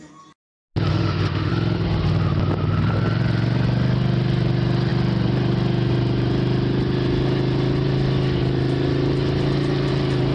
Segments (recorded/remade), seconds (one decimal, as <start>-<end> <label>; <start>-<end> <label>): 0.0-0.9 recorded; 0.9-1.5 remade; 1.5-10.3 recorded